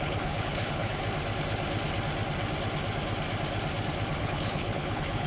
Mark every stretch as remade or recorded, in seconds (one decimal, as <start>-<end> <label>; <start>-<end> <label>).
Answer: 0.0-1.0 remade; 1.0-4.2 recorded; 4.2-5.3 remade